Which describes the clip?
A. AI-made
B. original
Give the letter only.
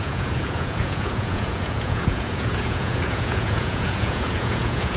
A